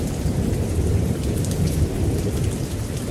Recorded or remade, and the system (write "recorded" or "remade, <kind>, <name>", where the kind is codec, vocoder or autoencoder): remade, vocoder, BigVGAN v2